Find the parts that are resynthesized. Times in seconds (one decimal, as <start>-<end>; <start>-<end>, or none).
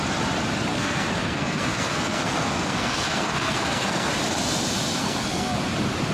0.7-4.1; 5.0-5.6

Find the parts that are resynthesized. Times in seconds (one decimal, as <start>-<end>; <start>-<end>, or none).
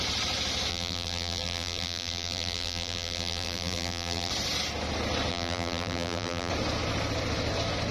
0.7-4.3; 5.3-6.5